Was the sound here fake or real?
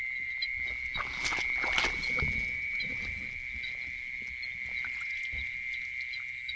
real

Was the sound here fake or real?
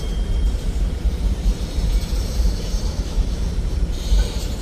fake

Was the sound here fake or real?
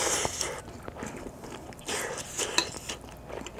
fake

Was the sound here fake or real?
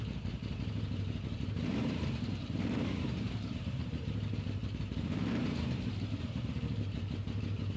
fake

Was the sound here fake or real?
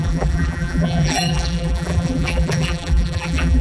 fake